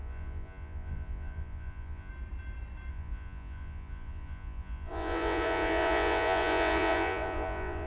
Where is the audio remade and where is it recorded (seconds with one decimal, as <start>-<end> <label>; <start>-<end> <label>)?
0.0-2.1 remade; 2.1-2.9 recorded; 2.9-7.9 remade